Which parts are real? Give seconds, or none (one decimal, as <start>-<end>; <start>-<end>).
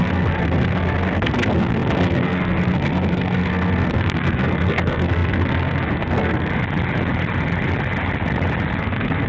6.5-8.8